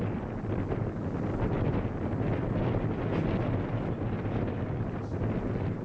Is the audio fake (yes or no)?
no